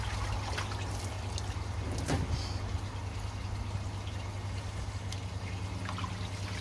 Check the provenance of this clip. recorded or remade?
recorded